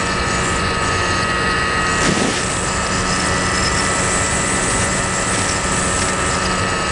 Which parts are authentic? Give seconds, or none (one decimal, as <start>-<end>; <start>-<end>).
1.8-4.3; 5.0-6.9